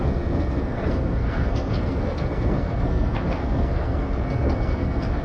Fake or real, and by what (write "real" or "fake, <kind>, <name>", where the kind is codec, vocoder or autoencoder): fake, codec, SNAC